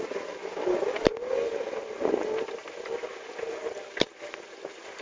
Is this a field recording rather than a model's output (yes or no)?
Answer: yes